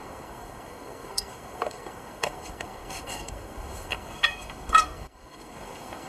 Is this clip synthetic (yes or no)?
yes